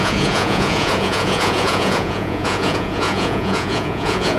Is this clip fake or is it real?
fake